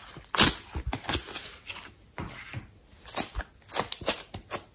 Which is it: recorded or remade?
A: recorded